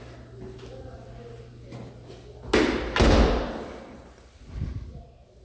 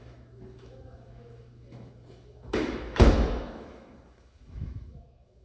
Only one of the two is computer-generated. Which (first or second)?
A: second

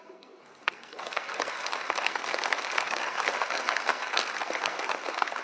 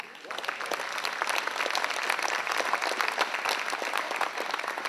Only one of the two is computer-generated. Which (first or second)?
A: first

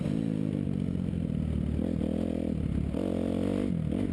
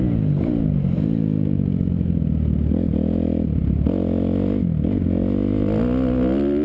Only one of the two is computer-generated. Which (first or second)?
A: first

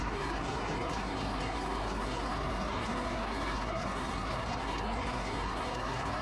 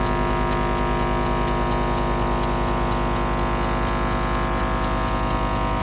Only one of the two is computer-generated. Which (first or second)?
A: first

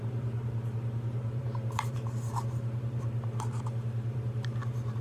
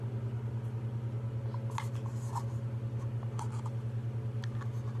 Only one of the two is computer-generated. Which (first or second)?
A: first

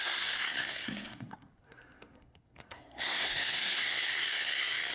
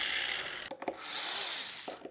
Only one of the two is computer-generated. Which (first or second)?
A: first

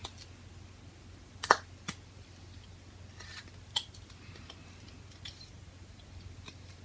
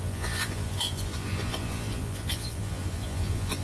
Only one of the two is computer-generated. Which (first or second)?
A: second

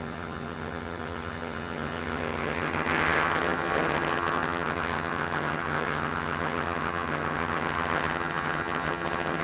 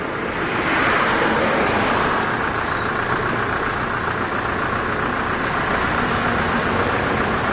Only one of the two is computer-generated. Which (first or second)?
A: first